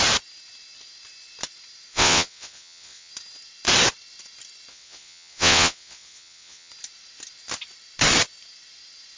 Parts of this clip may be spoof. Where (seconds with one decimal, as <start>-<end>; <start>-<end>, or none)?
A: 1.9-3.1; 4.7-6.7